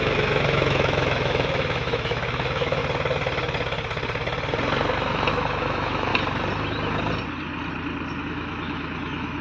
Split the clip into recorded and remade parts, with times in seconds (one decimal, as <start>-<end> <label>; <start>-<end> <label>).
0.0-2.8 remade; 2.8-5.3 recorded; 5.3-6.1 remade; 6.1-8.2 recorded; 8.2-9.4 remade